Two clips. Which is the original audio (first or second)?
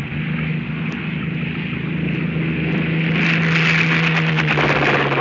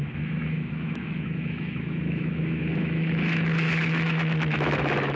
first